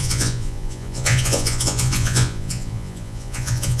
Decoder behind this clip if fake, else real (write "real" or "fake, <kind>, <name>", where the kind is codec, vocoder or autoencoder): fake, vocoder, Vocos